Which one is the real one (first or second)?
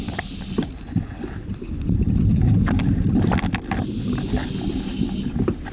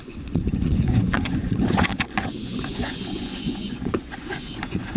first